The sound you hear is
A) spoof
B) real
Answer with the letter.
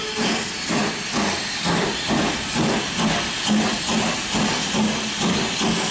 B